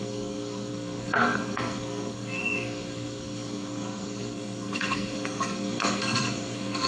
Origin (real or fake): fake